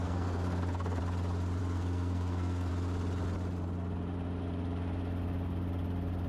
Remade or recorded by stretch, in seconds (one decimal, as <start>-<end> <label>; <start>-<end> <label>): 0.0-1.0 remade; 1.0-1.6 recorded; 1.6-2.7 remade; 2.7-6.3 recorded